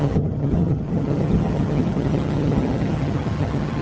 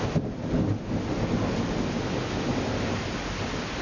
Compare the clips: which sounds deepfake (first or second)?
first